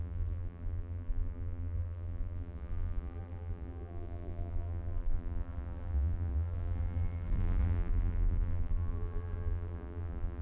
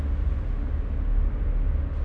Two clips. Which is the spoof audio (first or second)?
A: first